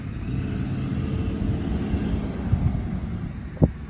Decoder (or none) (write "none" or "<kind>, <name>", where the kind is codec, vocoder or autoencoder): none